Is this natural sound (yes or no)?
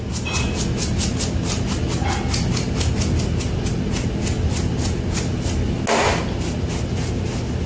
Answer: yes